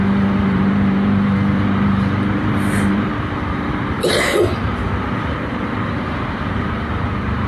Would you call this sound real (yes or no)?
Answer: no